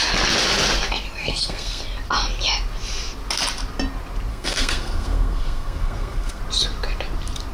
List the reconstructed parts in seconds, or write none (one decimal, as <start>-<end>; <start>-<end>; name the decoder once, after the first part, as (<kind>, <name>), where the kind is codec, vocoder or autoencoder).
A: 1.2-1.8 (codec, SNAC); 4.3-6.4